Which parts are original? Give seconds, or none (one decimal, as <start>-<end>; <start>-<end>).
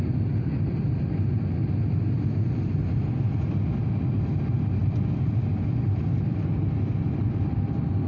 0.0-8.1